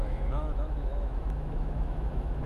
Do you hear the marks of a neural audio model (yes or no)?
yes